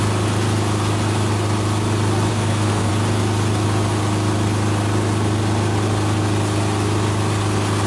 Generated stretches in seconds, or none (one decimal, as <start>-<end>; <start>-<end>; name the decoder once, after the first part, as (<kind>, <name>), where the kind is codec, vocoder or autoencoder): 2.3-2.9 (codec, SNAC)